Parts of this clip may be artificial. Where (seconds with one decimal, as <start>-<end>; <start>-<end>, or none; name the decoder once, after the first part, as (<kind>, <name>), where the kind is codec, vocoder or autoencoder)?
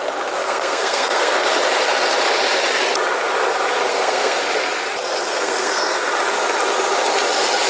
0.4-1.3 (codec, SNAC); 3.9-4.4; 5.3-6.1